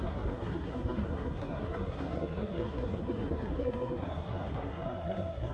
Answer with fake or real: fake